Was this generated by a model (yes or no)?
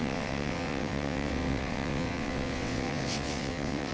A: yes